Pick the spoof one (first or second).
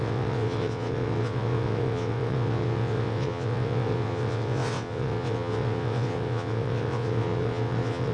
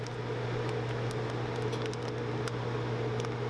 first